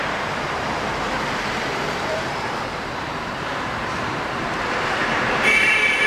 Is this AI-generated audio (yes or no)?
yes